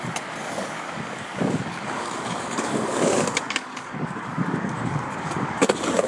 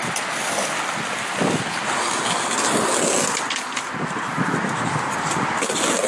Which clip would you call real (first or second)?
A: second